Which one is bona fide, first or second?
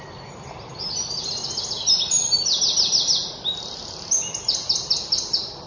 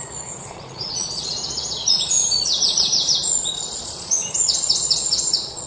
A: first